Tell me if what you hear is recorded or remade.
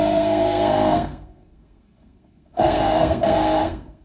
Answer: remade